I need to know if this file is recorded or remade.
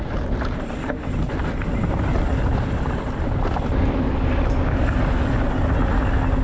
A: recorded